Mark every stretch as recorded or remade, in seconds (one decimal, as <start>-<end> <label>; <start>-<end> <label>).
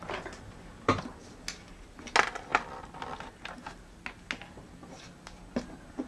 0.0-6.1 recorded